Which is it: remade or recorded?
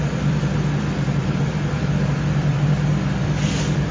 remade